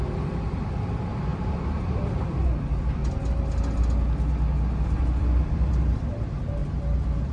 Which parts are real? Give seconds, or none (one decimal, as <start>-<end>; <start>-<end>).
3.0-5.2